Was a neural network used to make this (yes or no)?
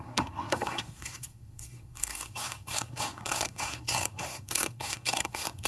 yes